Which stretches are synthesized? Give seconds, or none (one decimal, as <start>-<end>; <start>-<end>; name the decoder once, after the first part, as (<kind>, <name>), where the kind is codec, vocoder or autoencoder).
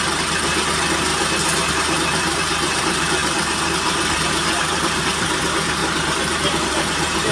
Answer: 0.0-1.1 (vocoder, BigVGAN v2); 1.7-7.3